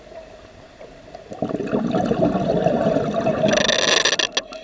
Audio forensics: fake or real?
real